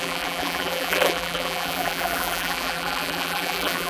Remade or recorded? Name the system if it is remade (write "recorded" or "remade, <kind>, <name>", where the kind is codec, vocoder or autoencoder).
remade, vocoder, BigVGAN v2